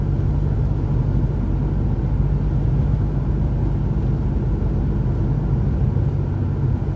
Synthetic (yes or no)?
no